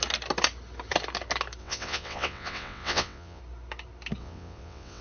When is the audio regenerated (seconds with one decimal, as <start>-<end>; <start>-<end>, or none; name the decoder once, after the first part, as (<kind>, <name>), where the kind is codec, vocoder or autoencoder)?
1.6-3.4 (vocoder, WaveNeXt); 4.2-5.0